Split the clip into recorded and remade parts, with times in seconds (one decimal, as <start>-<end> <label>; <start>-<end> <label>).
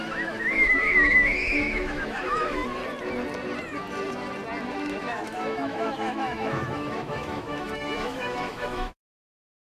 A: 0.0-2.6 remade; 2.6-4.7 recorded; 4.7-9.7 remade